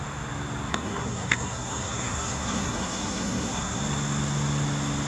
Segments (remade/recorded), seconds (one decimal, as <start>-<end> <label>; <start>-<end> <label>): 0.0-0.7 recorded; 0.7-3.8 remade; 3.8-5.1 recorded